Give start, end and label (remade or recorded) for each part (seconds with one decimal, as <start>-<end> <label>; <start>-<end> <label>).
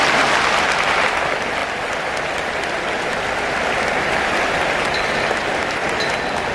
0.0-6.5 recorded